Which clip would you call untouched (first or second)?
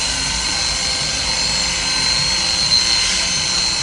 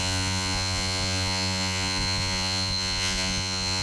first